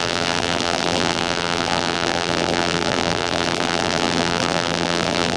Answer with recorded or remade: remade